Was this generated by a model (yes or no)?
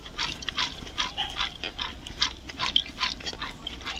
no